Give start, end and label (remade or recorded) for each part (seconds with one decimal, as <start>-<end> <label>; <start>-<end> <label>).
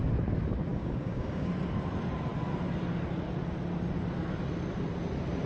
0.0-0.7 recorded; 0.7-1.5 remade; 1.5-5.5 recorded